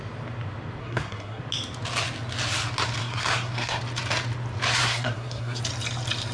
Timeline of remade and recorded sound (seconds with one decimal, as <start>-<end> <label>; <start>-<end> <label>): 0.0-0.8 recorded; 0.8-1.4 remade; 1.4-3.0 recorded; 3.0-3.8 remade; 3.8-4.8 recorded; 4.8-5.6 remade; 5.6-6.3 recorded